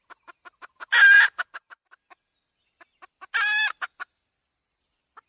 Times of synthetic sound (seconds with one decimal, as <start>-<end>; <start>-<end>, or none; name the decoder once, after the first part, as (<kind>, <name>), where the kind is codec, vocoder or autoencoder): none